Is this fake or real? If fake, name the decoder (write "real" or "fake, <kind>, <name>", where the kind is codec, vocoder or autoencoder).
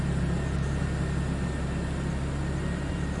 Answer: real